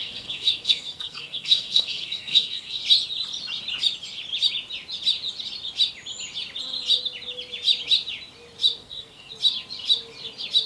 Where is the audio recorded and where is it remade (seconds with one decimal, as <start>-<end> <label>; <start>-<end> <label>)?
0.0-2.8 remade; 2.8-8.8 recorded; 8.8-9.3 remade; 9.3-10.7 recorded